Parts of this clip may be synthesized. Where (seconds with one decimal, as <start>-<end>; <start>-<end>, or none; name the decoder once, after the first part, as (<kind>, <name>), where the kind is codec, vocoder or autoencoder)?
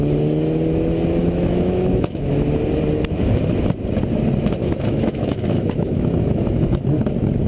1.2-2.3 (autoencoder, DAC-VAE); 4.6-6.5